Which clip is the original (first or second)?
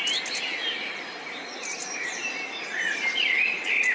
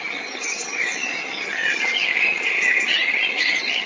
first